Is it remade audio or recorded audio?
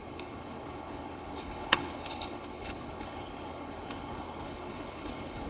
remade